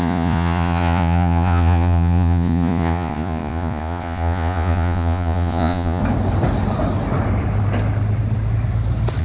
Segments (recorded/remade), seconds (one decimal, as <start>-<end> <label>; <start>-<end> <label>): 0.0-6.0 remade; 6.0-9.2 recorded